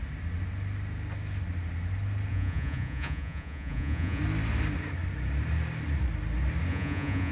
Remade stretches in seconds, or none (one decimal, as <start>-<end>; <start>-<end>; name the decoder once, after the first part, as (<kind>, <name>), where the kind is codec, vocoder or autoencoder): 2.3-4.2 (vocoder, Vocos); 6.7-7.3